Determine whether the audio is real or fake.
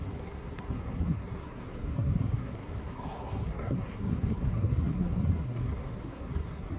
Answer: fake